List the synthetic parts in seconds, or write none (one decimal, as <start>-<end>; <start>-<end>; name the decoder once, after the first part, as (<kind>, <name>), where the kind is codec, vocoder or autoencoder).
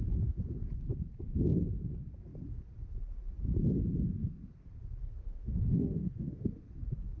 5.0-6.4 (autoencoder, DAC-VAE)